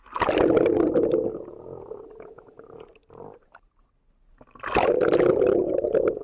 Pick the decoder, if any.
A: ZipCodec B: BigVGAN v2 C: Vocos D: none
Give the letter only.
D